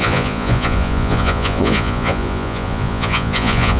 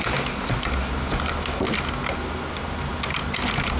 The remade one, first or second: first